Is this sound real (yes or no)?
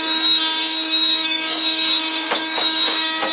no